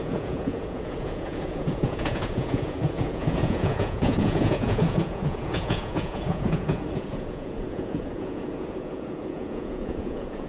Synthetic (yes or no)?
yes